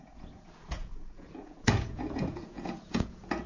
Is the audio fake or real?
fake